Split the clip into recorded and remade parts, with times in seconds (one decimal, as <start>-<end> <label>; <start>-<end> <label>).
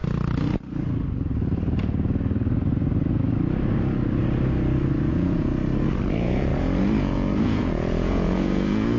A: 0.0-5.1 recorded; 5.1-5.5 remade; 5.5-6.1 recorded; 6.1-6.5 remade; 6.5-7.0 recorded; 7.0-9.0 remade